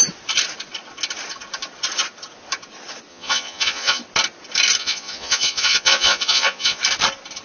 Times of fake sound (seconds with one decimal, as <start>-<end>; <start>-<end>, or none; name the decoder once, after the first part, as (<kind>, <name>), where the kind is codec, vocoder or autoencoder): 3.1-4.0 (vocoder, Vocos); 4.8-6.8